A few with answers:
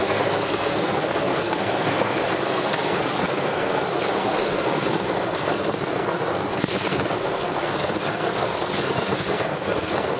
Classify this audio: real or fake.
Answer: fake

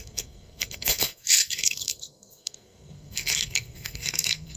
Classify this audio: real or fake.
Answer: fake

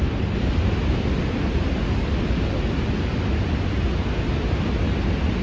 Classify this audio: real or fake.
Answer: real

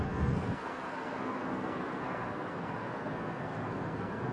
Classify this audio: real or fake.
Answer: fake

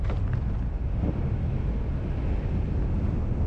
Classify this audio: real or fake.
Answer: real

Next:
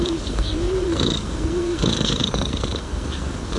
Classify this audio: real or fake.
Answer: fake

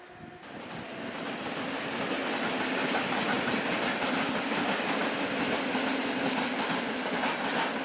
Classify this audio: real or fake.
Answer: real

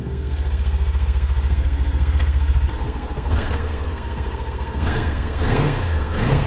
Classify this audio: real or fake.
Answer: fake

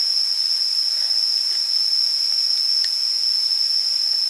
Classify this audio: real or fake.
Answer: real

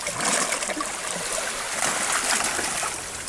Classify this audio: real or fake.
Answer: real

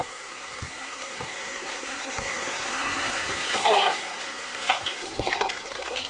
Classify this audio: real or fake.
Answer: fake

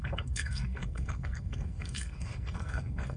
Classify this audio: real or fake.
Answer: fake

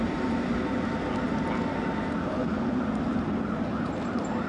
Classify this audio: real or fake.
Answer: real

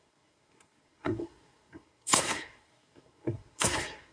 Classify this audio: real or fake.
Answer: fake